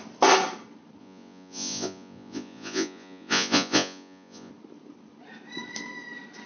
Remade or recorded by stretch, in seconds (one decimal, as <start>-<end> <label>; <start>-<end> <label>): 0.0-1.0 recorded; 1.0-4.5 remade; 4.5-6.5 recorded